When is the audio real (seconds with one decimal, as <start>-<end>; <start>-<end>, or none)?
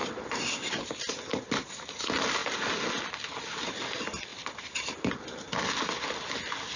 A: 0.0-1.3; 2.0-4.3; 5.1-6.8